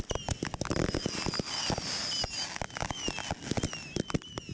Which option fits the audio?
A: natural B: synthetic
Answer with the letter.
A